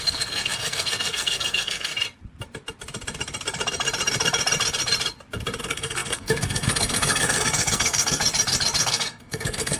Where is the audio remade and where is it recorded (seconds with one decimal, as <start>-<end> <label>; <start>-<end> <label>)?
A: 0.0-1.9 remade; 1.9-5.6 recorded; 5.6-8.2 remade; 8.2-8.8 recorded; 8.8-9.8 remade

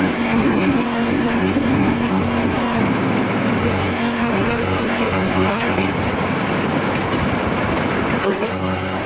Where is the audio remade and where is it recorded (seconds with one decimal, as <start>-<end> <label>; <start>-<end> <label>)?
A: 0.0-2.8 remade; 2.8-3.6 recorded; 3.6-5.9 remade; 5.9-8.2 recorded; 8.2-9.1 remade

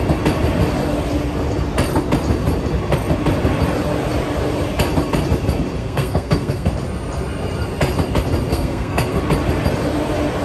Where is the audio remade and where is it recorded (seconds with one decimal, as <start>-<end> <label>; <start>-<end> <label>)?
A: 0.0-5.8 recorded; 5.8-6.7 remade; 6.7-8.5 recorded; 8.5-9.2 remade; 9.2-10.4 recorded

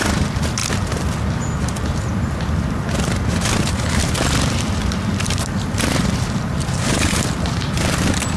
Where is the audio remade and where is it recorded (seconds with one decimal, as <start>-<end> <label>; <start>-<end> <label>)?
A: 0.0-0.6 remade; 0.6-2.5 recorded; 2.5-8.4 remade

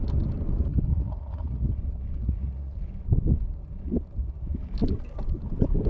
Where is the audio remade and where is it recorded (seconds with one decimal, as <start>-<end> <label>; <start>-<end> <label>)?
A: 0.0-0.9 recorded; 0.9-1.7 remade; 1.7-2.2 recorded; 2.2-2.8 remade; 2.8-5.9 recorded

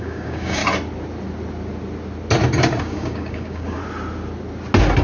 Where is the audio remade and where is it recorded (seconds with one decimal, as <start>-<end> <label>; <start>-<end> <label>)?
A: 0.0-0.6 remade; 0.6-2.8 recorded; 2.8-3.8 remade; 3.8-5.0 recorded